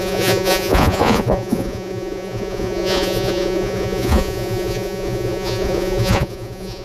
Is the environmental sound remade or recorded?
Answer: remade